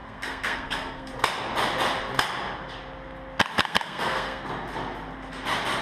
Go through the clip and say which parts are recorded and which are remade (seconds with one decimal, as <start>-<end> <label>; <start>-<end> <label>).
0.0-1.1 remade; 1.1-3.6 recorded; 3.6-4.5 remade; 4.5-5.8 recorded